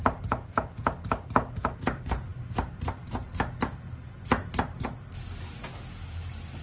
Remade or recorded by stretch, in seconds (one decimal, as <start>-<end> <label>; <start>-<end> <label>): 0.0-6.6 recorded